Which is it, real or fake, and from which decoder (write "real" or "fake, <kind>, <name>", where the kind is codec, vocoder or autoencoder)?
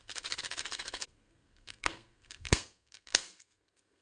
fake, codec, SNAC